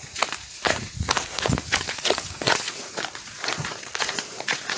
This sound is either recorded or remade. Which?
remade